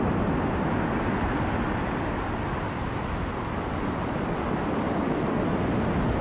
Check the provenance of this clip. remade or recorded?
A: recorded